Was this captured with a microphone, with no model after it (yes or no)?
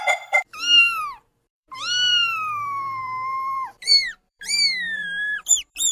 no